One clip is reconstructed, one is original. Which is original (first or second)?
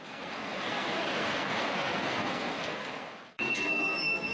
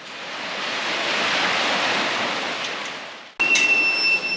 second